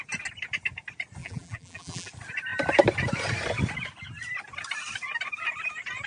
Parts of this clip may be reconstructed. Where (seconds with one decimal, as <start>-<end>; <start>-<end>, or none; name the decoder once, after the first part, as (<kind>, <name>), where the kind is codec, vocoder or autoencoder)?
1.2-2.1 (vocoder, BigVGAN v2)